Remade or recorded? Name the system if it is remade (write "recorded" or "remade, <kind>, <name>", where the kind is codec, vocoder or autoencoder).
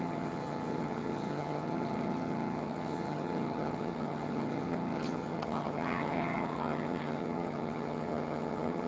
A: remade, vocoder, HiFi-GAN